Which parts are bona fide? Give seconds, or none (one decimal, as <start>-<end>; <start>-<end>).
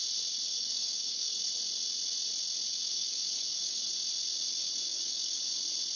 0.0-0.5; 1.5-2.9; 3.9-4.9; 5.4-6.0